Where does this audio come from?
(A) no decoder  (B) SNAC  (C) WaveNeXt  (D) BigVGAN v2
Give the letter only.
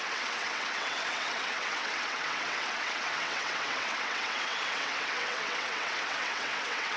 C